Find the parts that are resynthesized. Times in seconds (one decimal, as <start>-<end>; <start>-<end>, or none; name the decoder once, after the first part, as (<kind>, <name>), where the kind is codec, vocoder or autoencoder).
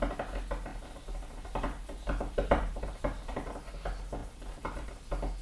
0.7-3.7 (vocoder, BigVGAN v2); 4.2-4.9